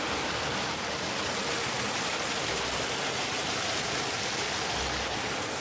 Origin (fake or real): real